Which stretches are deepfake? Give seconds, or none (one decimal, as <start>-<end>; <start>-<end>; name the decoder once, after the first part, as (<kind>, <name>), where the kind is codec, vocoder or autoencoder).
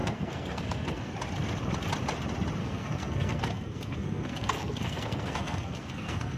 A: 0.0-1.1 (codec, SNAC); 2.6-6.4